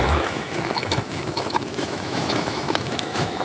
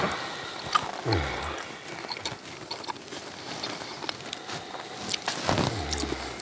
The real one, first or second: second